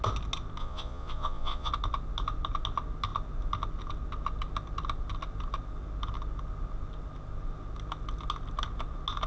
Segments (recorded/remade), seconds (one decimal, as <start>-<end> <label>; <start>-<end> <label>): 0.0-0.6 recorded; 0.6-1.7 remade; 1.7-9.3 recorded